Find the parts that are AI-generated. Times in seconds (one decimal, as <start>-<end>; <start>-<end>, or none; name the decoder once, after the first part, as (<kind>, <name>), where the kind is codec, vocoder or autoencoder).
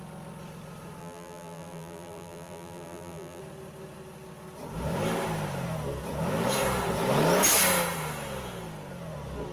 1.0-3.4 (vocoder, BigVGAN v2)